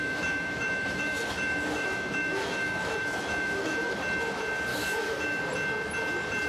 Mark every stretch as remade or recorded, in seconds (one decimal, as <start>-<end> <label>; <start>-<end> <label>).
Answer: 0.0-3.9 remade; 3.9-4.7 recorded; 4.7-5.4 remade; 5.4-6.5 recorded